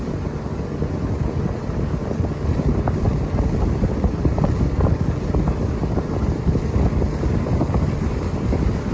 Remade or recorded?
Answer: recorded